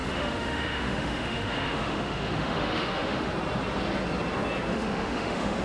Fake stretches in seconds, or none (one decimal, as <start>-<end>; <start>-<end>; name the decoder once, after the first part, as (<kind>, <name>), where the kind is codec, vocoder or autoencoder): 0.0-3.3 (autoencoder, DAC-VAE); 4.7-5.6

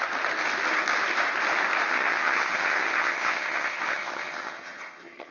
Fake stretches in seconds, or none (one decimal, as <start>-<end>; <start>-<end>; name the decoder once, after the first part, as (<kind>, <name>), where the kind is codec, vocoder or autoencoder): 1.9-5.3 (vocoder, HiFi-GAN)

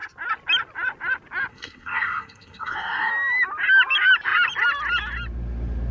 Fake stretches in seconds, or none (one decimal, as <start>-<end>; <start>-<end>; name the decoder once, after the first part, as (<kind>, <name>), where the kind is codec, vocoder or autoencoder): 1.5-3.1 (codec, SNAC)

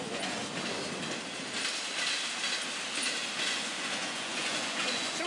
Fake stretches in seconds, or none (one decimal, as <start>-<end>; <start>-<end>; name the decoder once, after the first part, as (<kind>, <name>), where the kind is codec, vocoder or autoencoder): 0.0-0.4 (vocoder, Vocos); 3.4-5.3

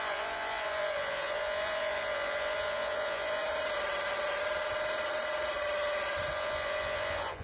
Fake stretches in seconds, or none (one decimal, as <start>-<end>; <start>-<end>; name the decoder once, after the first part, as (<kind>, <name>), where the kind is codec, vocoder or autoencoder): 0.0-3.4 (vocoder, Vocos); 6.3-7.4

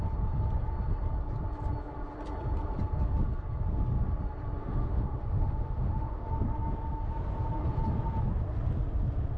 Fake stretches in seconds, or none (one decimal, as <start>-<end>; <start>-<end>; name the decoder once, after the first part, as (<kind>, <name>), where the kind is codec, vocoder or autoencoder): 4.6-6.3 (autoencoder, DAC-VAE)